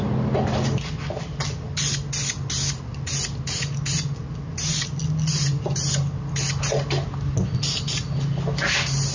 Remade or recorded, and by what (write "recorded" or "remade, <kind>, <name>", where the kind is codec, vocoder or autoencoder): recorded